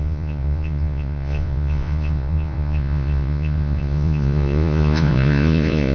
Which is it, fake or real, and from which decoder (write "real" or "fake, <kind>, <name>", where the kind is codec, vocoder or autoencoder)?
fake, vocoder, Vocos